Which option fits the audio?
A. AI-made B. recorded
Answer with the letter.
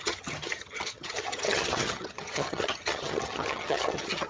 A